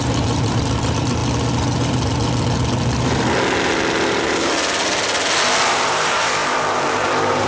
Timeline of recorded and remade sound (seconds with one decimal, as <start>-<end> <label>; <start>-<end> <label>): 0.0-1.2 remade; 1.2-5.7 recorded; 5.7-7.5 remade